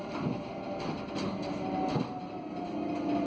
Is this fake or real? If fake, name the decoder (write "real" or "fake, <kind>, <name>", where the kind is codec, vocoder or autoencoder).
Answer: real